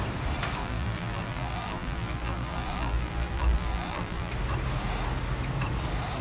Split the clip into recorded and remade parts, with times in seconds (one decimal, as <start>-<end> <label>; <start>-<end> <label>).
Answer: 0.0-0.6 recorded; 0.6-4.3 remade; 4.3-6.2 recorded